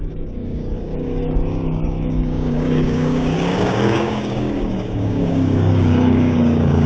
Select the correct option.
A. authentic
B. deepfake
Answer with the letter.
B